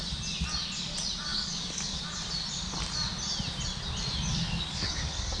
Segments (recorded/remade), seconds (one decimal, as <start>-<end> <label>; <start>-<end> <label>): 0.0-1.3 recorded; 1.3-2.0 remade; 2.0-4.3 recorded; 4.3-5.4 remade